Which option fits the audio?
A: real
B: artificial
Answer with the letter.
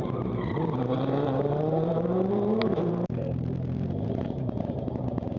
B